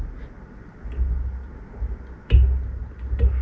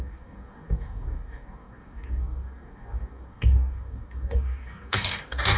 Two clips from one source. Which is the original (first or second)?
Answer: first